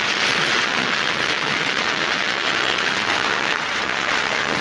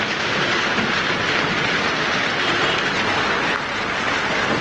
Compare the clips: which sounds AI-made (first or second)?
first